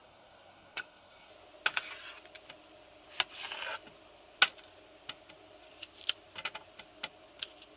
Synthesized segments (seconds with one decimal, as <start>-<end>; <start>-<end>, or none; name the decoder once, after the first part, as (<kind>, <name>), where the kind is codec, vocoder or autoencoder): 0.0-1.3 (codec, SNAC)